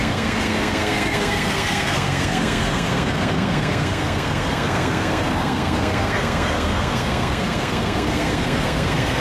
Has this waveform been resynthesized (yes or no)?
yes